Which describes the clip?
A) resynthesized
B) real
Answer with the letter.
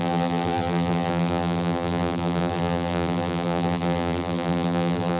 A